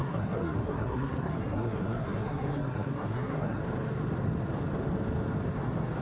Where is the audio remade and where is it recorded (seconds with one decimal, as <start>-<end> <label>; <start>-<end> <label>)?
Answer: 0.0-3.6 remade; 3.6-6.0 recorded